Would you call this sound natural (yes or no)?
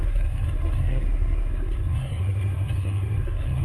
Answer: no